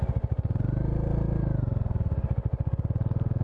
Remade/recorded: recorded